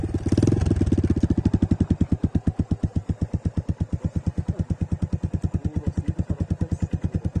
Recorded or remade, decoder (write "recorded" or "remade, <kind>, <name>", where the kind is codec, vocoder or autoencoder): recorded